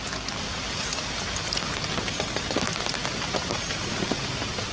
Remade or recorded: recorded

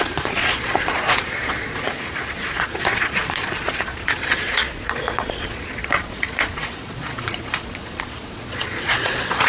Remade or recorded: remade